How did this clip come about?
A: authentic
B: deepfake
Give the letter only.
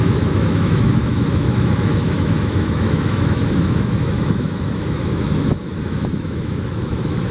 B